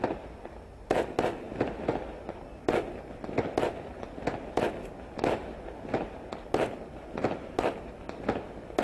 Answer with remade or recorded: recorded